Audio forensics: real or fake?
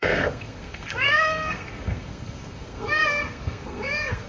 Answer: fake